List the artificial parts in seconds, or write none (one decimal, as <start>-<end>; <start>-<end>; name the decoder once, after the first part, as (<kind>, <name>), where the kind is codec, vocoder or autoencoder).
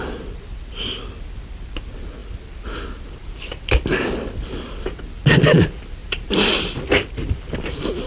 6.0-6.7 (vocoder, BigVGAN v2)